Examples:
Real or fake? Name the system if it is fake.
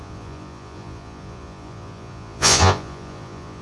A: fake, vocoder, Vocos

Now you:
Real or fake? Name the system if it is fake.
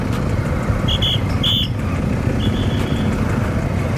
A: real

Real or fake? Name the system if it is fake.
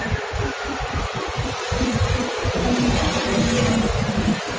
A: real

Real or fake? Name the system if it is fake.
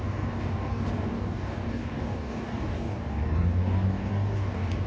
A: fake, codec, DAC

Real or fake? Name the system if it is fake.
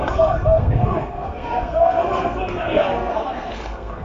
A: fake, codec, SNAC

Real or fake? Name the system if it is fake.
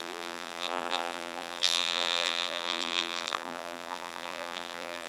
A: fake, vocoder, BigVGAN v2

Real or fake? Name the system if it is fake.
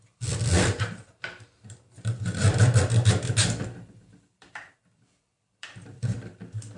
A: fake, vocoder, BigVGAN v2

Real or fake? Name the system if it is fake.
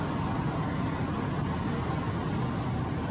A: real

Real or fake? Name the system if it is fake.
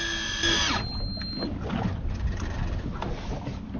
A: real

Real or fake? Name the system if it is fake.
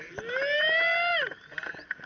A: real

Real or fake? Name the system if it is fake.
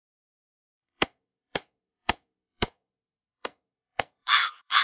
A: fake, codec, SNAC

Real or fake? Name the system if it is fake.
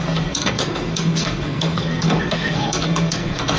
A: fake, codec, SNAC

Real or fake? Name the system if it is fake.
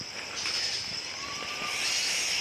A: real